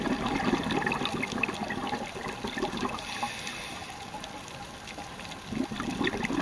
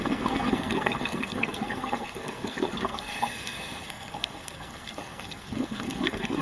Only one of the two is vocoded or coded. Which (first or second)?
second